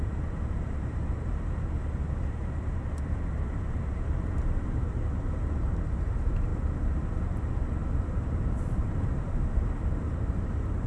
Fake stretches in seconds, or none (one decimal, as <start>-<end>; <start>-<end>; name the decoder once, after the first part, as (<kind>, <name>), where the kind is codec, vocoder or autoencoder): 0.0-6.5 (vocoder, BigVGAN v2); 7.3-10.9